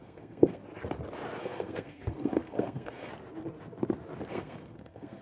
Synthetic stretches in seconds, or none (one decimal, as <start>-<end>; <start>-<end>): 0.0-0.6; 1.4-3.1; 4.3-5.2